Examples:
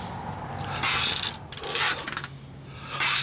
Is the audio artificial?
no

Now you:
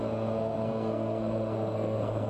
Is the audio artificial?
yes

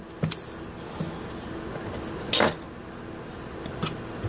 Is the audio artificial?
no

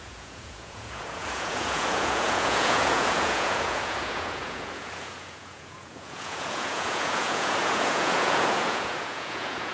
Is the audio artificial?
yes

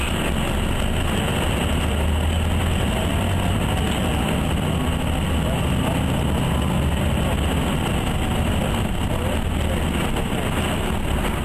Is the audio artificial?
no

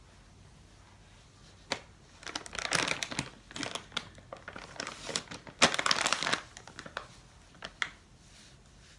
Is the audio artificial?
no